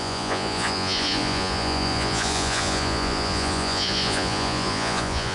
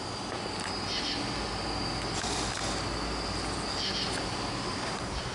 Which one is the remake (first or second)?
first